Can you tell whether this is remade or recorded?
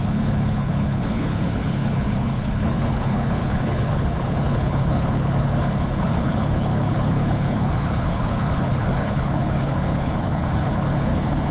remade